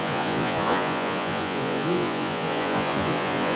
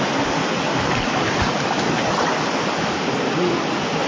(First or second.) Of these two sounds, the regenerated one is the first